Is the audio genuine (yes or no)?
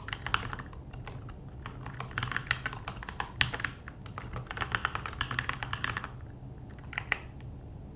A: yes